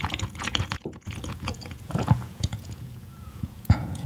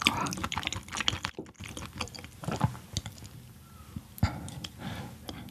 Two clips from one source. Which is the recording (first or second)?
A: second